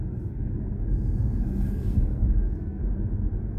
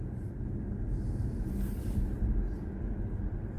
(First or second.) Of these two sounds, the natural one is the second